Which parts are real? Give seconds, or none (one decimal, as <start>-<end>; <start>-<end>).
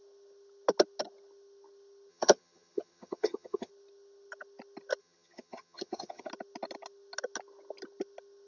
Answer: 0.0-2.1; 3.7-5.0; 6.3-8.5